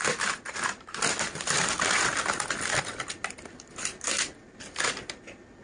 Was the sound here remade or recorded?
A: recorded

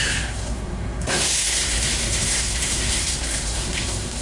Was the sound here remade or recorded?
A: remade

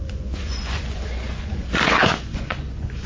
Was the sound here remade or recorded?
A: remade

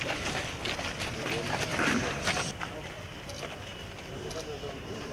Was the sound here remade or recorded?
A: recorded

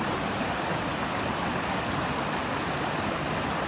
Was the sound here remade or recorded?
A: recorded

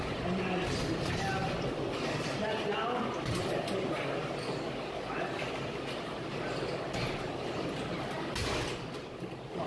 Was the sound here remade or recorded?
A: recorded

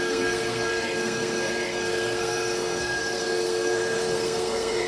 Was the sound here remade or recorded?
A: remade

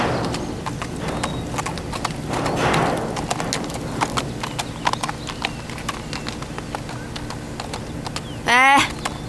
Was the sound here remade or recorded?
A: recorded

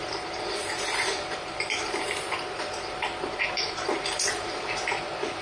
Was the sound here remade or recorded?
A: remade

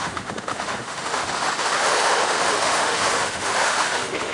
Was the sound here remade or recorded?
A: remade